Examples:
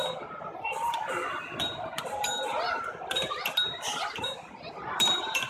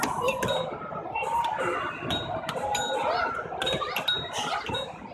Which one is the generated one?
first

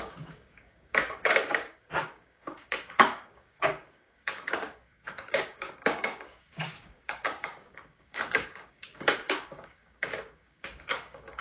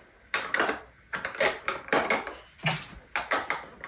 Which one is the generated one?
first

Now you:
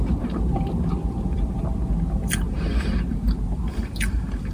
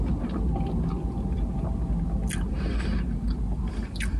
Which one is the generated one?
first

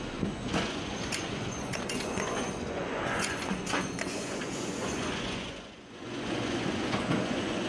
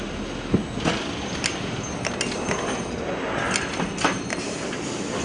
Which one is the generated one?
first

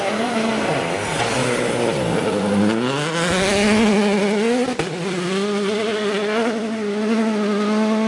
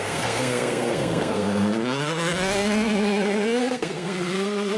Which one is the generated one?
second